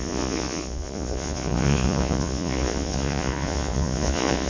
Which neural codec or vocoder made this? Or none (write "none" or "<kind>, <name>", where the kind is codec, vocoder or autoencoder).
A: vocoder, Vocos